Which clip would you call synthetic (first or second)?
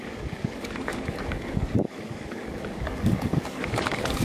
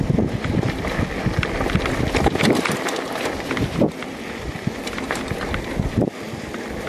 first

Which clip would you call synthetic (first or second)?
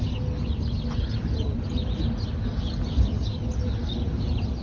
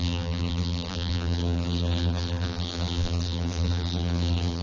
second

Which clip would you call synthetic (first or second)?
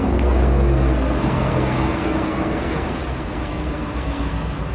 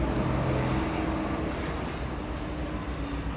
first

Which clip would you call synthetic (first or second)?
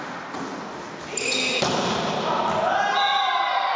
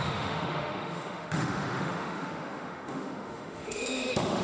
second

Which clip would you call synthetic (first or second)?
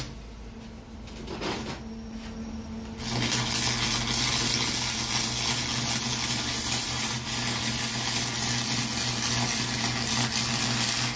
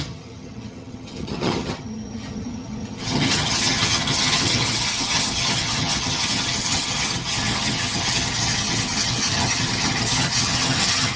second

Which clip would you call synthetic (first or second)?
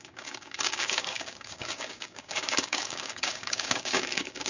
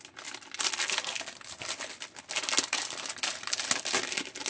first